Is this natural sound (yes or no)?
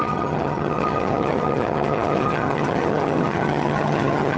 no